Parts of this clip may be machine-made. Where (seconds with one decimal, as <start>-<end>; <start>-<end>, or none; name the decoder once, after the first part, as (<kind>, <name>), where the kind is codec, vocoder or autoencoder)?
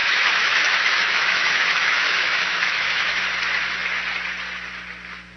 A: 0.0-3.2 (autoencoder, DAC-VAE)